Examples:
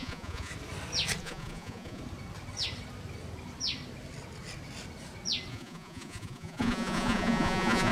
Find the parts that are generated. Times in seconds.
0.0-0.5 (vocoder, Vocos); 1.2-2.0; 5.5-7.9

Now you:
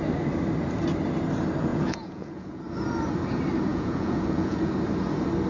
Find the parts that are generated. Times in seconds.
1.7-2.6 (vocoder, Vocos); 3.7-4.7

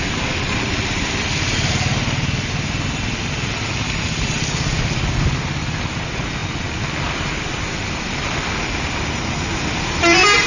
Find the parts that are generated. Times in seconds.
none

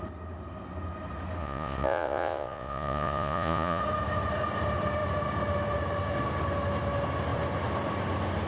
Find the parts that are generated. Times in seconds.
1.4-3.8 (vocoder, Vocos)